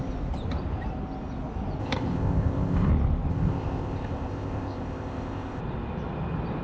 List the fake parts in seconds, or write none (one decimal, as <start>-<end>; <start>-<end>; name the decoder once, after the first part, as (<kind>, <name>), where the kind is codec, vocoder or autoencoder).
1.8-2.9 (codec, ZipCodec); 3.3-5.6